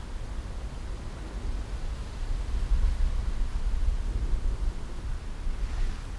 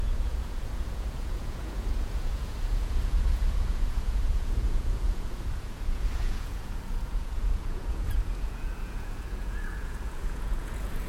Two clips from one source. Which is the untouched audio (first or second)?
first